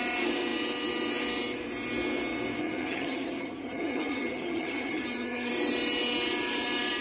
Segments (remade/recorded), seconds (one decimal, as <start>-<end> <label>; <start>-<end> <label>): 0.0-2.6 recorded; 2.6-5.5 remade; 5.5-7.0 recorded